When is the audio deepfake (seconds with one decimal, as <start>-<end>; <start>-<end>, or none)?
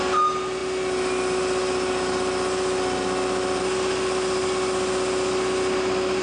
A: none